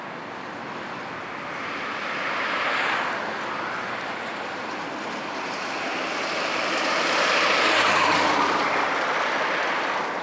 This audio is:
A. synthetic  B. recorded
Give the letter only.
B